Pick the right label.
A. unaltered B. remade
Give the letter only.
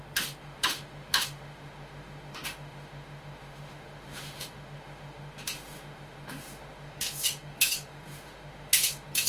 B